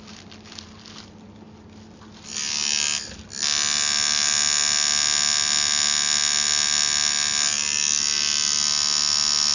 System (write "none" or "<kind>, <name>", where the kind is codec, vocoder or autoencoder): none